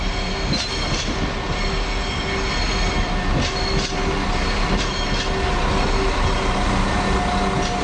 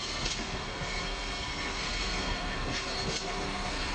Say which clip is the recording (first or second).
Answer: first